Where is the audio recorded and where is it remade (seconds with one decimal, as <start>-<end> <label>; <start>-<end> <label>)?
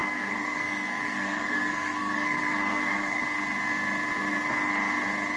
0.0-3.2 remade; 3.2-5.4 recorded